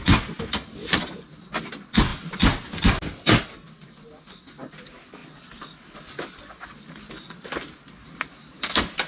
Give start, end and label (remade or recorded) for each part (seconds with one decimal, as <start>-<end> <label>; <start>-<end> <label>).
0.0-9.1 recorded